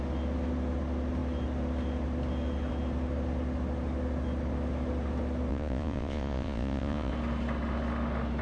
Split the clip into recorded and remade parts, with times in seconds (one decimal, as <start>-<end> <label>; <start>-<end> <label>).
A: 0.0-5.5 recorded; 5.5-7.1 remade; 7.1-8.4 recorded